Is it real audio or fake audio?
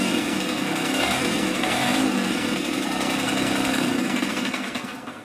fake